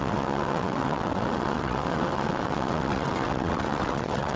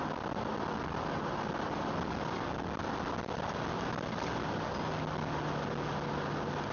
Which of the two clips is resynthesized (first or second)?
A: first